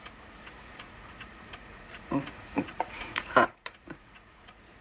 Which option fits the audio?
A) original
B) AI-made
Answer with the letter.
B